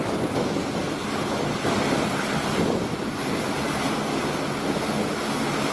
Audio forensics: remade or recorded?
recorded